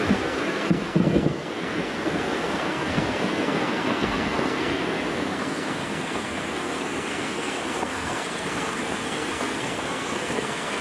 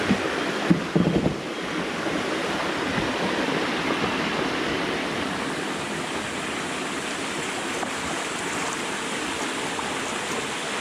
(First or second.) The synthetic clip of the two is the first